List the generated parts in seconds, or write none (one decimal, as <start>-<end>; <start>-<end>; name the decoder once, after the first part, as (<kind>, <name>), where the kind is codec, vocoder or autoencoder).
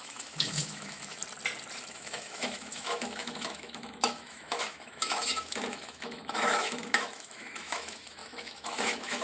0.0-1.2 (autoencoder, DAC-VAE); 1.9-9.2